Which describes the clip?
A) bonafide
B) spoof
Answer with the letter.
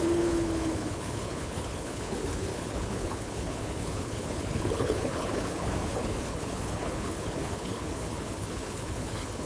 B